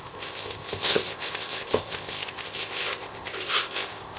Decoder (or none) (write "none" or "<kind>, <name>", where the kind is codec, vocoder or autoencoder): codec, ZipCodec